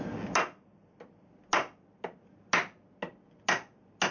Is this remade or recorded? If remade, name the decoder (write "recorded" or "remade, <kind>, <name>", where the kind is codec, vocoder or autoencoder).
recorded